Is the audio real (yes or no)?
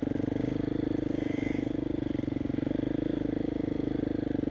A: yes